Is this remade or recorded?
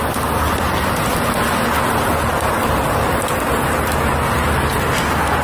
recorded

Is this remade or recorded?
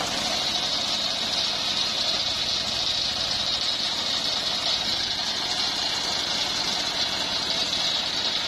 recorded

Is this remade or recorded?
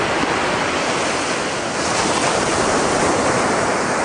recorded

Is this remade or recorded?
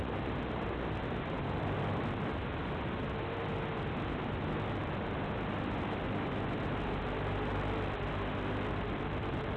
recorded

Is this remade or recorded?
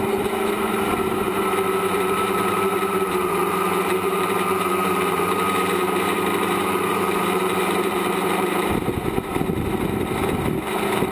remade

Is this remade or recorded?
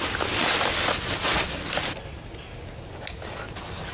recorded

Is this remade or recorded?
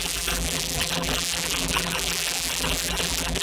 remade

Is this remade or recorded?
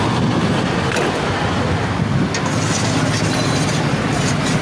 recorded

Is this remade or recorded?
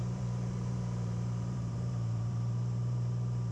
remade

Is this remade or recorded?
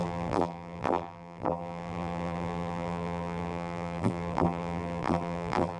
remade